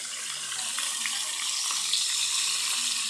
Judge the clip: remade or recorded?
recorded